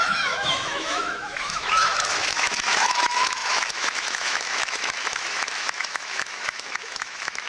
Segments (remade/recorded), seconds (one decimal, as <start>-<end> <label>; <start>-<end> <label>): 0.0-7.5 remade